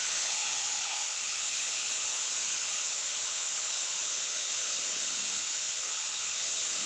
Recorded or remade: remade